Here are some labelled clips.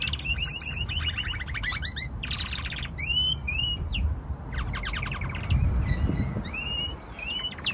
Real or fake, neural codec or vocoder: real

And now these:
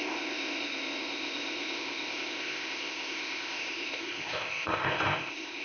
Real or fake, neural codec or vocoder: fake, codec, ZipCodec